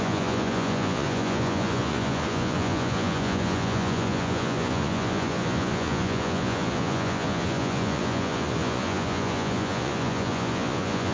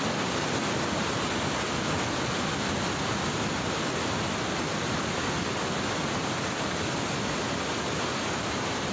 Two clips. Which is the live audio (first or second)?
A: second